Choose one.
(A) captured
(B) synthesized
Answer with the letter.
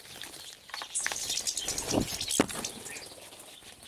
A